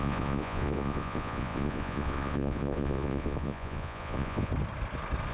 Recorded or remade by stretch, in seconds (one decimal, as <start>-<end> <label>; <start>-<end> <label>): 0.0-4.5 remade; 4.5-5.3 recorded